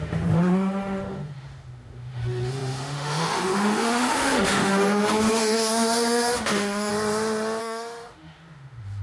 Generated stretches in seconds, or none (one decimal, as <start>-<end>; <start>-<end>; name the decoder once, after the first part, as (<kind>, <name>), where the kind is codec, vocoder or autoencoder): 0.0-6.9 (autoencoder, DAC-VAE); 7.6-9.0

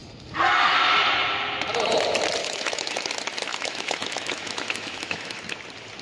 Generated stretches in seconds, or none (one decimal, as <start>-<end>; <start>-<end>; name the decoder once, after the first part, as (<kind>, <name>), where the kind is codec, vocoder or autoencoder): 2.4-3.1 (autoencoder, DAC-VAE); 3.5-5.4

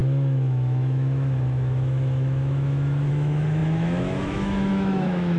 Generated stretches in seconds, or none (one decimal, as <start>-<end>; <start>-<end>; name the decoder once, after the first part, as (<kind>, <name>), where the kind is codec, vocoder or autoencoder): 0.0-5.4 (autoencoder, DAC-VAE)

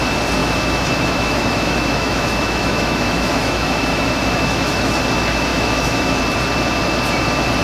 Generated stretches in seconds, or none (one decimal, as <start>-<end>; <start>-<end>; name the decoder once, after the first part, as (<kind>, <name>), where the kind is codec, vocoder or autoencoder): 0.4-5.0 (autoencoder, DAC-VAE); 5.5-6.2

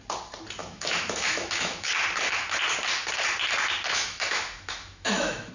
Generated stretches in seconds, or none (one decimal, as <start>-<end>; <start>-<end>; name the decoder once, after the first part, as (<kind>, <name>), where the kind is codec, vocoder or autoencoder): 0.6-1.9 (autoencoder, DAC-VAE); 3.9-5.5

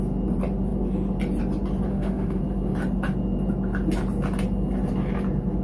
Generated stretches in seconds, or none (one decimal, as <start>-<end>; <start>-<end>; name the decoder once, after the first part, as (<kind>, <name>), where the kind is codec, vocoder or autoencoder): 1.9-2.4 (autoencoder, DAC-VAE)